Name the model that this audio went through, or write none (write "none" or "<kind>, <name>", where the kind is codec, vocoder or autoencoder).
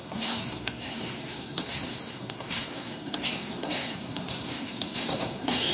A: codec, SNAC